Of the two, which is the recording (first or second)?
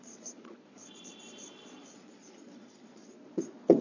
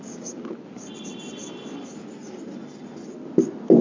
second